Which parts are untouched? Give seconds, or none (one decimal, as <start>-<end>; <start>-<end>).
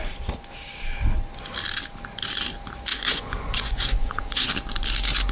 0.0-2.9; 4.5-5.3